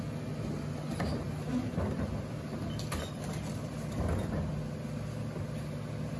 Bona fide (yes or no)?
yes